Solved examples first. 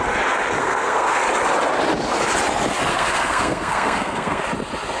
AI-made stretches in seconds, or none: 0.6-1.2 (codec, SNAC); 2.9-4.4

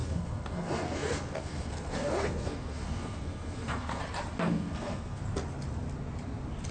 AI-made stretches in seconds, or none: 0.0-4.0 (codec, SNAC); 4.4-5.2